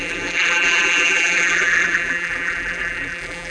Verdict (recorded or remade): remade